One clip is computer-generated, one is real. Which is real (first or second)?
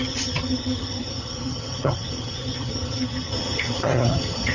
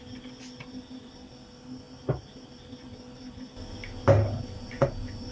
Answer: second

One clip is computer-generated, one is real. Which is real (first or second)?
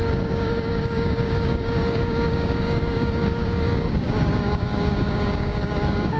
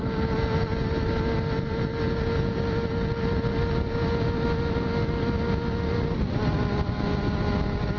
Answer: second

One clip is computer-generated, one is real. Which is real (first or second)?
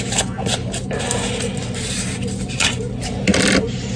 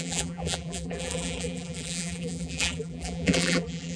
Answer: first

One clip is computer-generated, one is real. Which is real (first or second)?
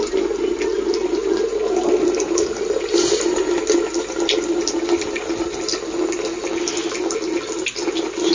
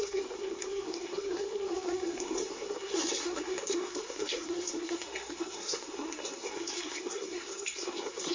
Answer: first